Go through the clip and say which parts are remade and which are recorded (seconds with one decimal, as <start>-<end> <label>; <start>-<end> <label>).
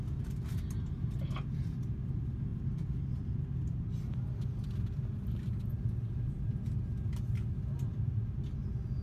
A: 0.0-9.0 recorded